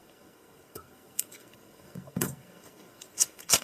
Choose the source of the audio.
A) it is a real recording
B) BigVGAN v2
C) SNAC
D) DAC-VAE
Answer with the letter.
C